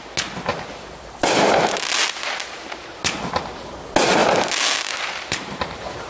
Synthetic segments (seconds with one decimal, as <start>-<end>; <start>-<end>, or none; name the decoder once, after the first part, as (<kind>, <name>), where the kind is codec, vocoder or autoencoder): 0.5-3.0 (vocoder, BigVGAN v2); 4.2-5.6